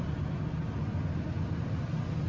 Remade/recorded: recorded